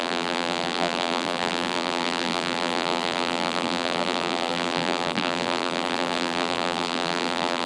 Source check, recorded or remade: remade